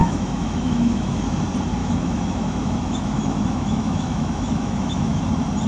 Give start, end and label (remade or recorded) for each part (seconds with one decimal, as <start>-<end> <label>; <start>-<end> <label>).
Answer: 0.0-1.4 remade; 1.4-1.8 recorded; 1.8-5.2 remade; 5.2-5.7 recorded

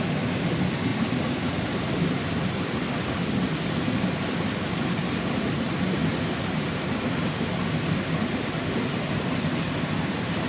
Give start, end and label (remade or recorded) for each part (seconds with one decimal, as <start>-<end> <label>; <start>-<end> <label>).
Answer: 0.0-10.5 recorded

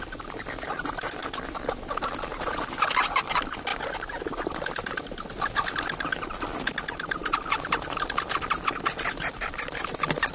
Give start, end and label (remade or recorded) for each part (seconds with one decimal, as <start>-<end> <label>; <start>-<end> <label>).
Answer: 0.0-10.3 recorded

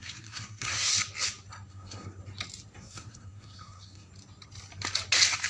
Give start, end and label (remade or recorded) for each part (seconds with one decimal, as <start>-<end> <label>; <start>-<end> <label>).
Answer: 0.0-0.9 remade; 0.9-1.7 recorded; 1.7-2.2 remade; 2.2-2.8 recorded; 2.8-4.1 remade; 4.1-5.5 recorded

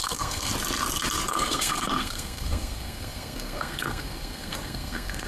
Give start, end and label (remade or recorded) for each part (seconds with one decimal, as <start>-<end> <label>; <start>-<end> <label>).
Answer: 0.0-0.5 remade; 0.5-1.3 recorded; 1.3-5.3 remade

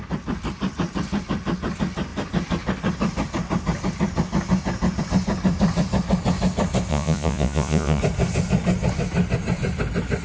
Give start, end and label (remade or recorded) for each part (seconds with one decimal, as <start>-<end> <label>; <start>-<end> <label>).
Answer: 0.0-6.9 recorded; 6.9-8.0 remade; 8.0-10.2 recorded

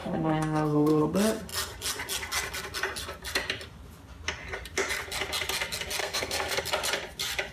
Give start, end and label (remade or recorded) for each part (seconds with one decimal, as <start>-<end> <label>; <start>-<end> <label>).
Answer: 0.0-1.0 remade; 1.0-6.0 recorded; 6.0-6.6 remade; 6.6-7.5 recorded

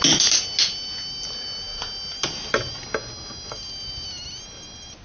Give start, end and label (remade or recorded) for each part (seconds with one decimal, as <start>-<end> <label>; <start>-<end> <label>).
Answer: 0.0-5.0 recorded